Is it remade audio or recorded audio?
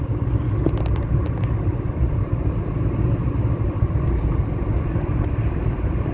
recorded